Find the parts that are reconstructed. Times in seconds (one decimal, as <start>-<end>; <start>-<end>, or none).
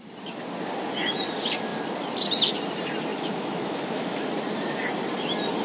3.1-4.3